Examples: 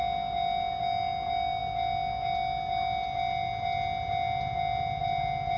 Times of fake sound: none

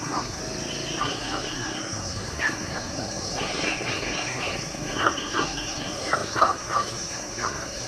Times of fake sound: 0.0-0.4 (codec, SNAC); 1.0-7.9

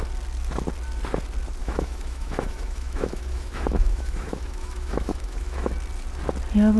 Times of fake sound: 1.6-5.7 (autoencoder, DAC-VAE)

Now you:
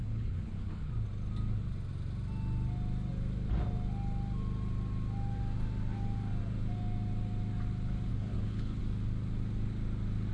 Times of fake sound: 0.0-0.9 (codec, HILCodec); 8.1-8.8

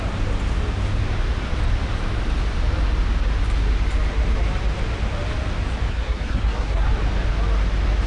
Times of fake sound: 5.9-6.8 (codec, SNAC)